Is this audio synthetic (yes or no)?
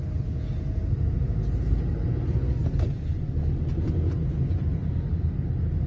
no